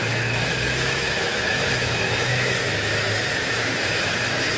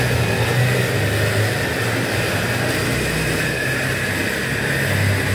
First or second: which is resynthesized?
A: first